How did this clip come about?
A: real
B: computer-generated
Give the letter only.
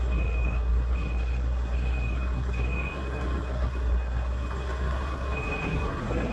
B